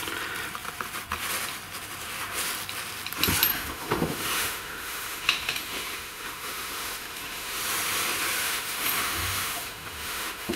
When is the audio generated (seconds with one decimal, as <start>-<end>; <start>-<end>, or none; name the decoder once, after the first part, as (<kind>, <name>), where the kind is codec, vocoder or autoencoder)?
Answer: 3.5-7.6 (autoencoder, DAC-VAE); 8.4-10.6